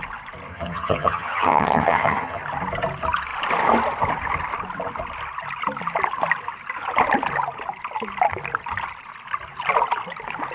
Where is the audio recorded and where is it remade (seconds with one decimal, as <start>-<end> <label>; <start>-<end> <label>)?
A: 0.0-0.5 recorded; 0.5-2.4 remade; 2.4-10.5 recorded